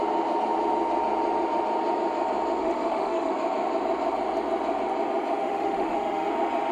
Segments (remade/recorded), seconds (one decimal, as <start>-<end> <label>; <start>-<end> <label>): 0.0-2.6 recorded; 2.6-3.3 remade; 3.3-5.4 recorded; 5.4-6.3 remade; 6.3-6.7 recorded